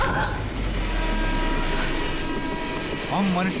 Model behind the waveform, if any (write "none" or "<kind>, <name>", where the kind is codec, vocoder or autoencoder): none